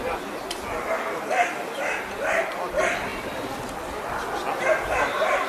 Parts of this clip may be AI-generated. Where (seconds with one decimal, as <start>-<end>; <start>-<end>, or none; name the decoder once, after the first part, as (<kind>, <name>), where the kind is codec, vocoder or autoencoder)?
3.1-3.8 (vocoder, BigVGAN v2)